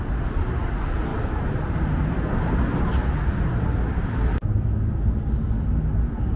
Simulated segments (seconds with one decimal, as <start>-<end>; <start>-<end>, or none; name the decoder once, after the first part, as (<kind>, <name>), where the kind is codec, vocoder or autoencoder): none